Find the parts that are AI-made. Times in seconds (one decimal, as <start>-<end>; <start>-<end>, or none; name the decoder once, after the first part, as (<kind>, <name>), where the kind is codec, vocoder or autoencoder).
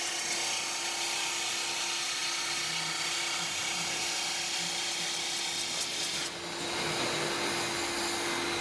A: none